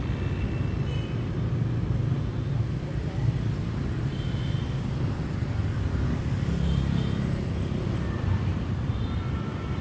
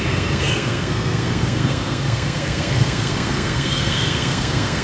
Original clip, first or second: first